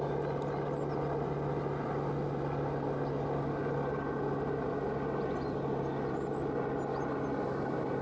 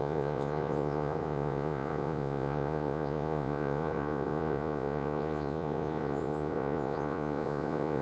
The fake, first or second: second